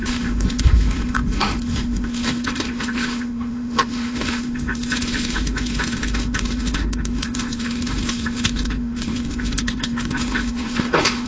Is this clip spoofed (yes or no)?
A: yes